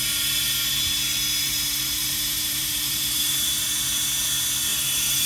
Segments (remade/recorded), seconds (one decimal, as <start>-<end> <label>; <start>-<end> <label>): 0.0-1.4 recorded; 1.4-3.5 remade; 3.5-4.7 recorded; 4.7-5.3 remade